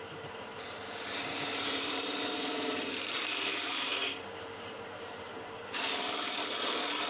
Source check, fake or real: fake